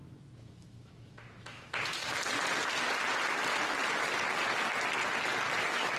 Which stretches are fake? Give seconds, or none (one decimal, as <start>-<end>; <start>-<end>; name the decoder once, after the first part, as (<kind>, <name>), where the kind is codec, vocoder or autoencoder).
0.0-2.0 (autoencoder, DAC-VAE); 5.6-6.0

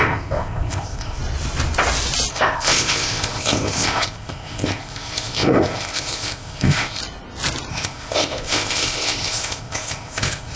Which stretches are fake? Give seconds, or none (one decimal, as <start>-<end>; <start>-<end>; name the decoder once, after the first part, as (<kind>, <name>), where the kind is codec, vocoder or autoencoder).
0.0-1.2 (codec, ZipCodec); 2.3-7.0; 7.7-10.6